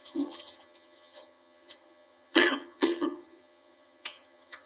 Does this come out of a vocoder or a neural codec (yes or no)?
yes